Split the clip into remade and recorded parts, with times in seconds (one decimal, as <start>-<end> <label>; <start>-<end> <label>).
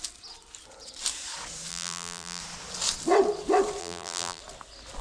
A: 0.0-1.7 recorded; 1.7-2.4 remade; 2.4-3.8 recorded; 3.8-4.4 remade; 4.4-5.0 recorded